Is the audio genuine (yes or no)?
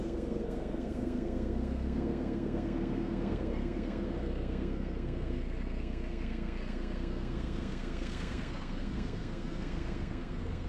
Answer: no